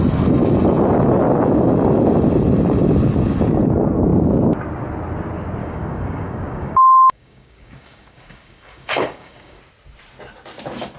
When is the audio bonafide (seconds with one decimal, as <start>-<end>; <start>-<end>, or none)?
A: 0.0-5.6; 9.6-11.0